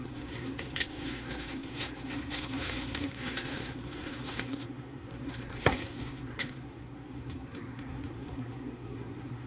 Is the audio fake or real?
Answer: fake